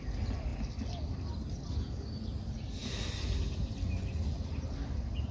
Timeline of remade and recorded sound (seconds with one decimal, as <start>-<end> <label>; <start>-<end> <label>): 0.0-5.3 recorded